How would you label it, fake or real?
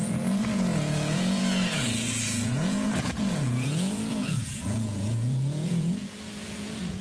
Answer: fake